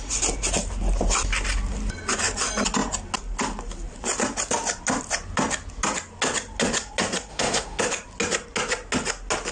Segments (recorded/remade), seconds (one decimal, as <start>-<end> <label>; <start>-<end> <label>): 0.0-7.3 recorded; 7.3-7.8 remade; 7.8-9.5 recorded